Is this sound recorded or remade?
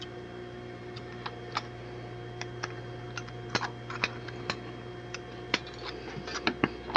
remade